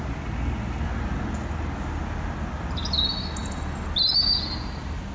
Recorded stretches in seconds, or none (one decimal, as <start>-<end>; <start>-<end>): 0.0-5.1